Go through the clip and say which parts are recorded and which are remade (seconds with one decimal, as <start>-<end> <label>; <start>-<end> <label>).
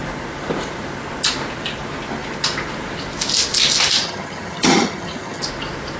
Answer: 0.0-4.0 recorded; 4.0-5.4 remade; 5.4-6.0 recorded